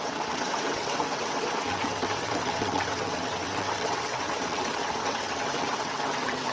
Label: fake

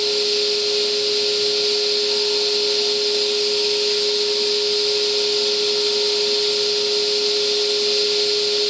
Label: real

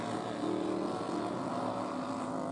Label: real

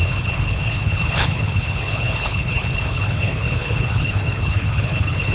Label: fake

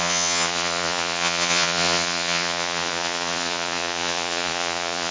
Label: fake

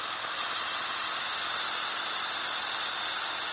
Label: real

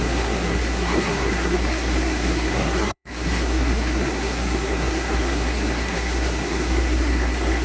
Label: fake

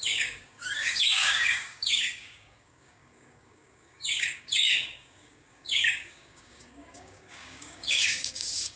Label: fake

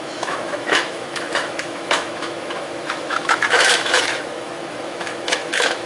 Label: fake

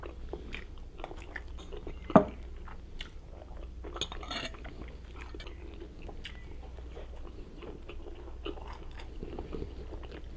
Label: real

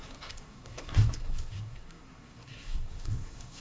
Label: fake